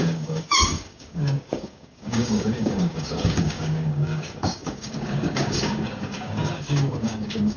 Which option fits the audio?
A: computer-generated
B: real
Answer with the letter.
A